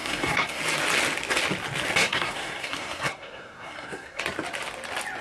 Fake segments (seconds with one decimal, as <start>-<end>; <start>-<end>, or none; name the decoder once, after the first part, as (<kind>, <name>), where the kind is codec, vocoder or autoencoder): 0.0-0.6 (codec, SNAC); 2.0-4.2

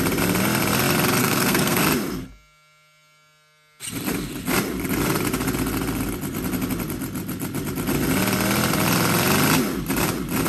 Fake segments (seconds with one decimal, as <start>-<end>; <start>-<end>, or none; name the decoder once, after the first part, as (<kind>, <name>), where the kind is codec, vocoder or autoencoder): 1.2-1.8 (codec, SNAC)

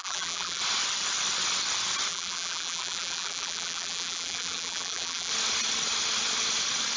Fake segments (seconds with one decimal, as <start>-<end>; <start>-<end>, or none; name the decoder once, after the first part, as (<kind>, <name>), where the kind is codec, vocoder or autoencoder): 0.0-0.6 (vocoder, BigVGAN v2); 2.1-5.3